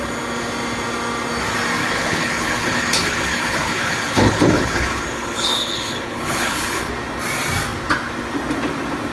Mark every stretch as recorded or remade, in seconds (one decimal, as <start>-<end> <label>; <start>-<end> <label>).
0.0-1.8 recorded; 1.8-6.9 remade; 6.9-9.1 recorded